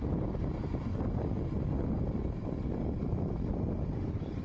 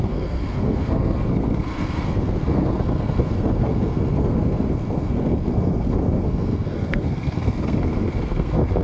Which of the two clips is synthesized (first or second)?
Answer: second